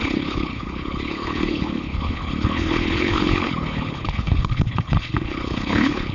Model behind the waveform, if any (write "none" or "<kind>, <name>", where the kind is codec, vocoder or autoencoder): codec, HILCodec